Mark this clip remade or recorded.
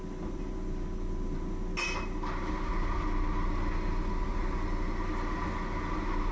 recorded